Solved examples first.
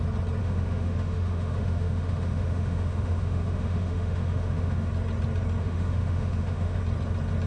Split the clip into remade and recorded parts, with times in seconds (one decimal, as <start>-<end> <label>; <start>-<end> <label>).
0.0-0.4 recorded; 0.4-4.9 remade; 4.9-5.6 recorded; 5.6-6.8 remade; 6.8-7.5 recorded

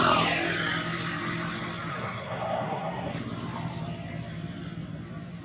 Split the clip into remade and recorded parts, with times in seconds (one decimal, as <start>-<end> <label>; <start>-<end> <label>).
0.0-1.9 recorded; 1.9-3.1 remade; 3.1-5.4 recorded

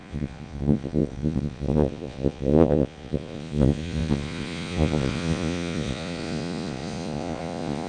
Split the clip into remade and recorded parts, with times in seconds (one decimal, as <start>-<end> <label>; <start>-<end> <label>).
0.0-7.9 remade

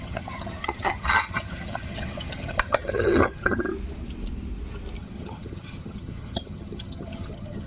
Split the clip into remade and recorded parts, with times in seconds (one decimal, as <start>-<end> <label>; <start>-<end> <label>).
0.0-3.6 remade; 3.6-5.0 recorded; 5.0-7.7 remade

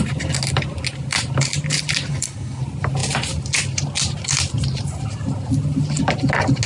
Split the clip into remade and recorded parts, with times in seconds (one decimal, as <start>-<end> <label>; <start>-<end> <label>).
0.0-2.1 recorded; 2.1-2.6 remade; 2.6-6.7 recorded

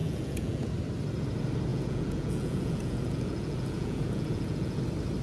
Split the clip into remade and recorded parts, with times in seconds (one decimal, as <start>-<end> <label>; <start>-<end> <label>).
0.0-0.7 remade; 0.7-1.7 recorded; 1.7-4.8 remade; 4.8-5.2 recorded

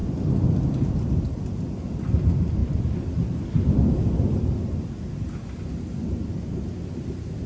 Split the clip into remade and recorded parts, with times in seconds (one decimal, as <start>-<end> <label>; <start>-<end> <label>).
0.0-7.5 recorded

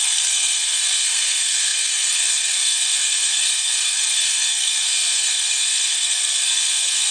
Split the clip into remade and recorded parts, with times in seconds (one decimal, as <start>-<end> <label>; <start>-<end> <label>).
0.0-7.1 remade